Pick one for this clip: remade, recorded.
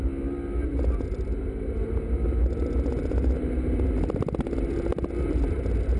recorded